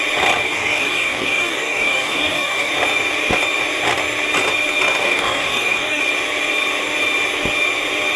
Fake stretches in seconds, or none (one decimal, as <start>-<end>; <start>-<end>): 0.4-2.7; 5.0-6.0